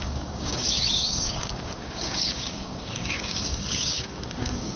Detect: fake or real fake